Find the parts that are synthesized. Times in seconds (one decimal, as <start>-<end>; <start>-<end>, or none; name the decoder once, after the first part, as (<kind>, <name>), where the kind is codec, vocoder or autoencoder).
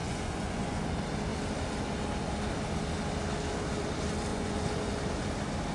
0.0-0.8 (vocoder, Vocos); 4.3-5.0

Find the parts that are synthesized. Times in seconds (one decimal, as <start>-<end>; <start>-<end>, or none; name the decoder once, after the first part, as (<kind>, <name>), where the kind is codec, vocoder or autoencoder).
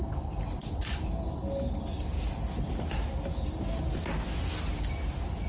none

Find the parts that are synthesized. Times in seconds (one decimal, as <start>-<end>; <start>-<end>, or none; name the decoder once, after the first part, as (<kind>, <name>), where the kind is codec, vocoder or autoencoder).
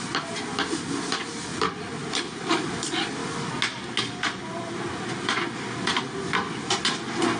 none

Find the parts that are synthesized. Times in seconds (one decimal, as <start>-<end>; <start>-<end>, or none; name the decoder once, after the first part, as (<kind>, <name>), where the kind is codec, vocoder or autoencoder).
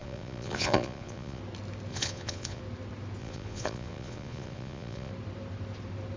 0.0-1.4 (vocoder, Vocos); 1.9-2.6; 3.2-5.1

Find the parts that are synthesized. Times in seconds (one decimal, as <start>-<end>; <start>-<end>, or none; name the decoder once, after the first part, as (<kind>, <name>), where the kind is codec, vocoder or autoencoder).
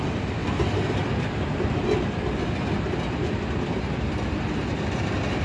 none